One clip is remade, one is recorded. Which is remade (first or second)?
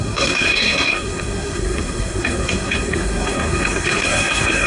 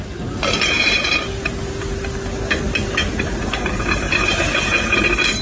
first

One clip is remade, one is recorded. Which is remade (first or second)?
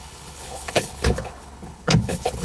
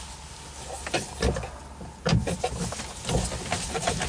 first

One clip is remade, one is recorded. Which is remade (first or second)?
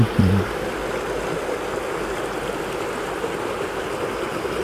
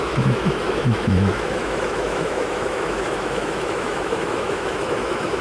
second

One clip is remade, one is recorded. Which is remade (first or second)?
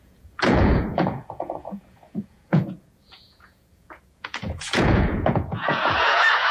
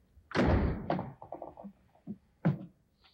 first